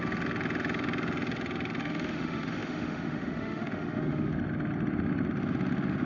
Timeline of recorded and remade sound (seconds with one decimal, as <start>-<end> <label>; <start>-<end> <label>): 0.0-1.8 recorded; 1.8-4.3 remade; 4.3-6.0 recorded